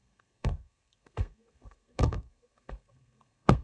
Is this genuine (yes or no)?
no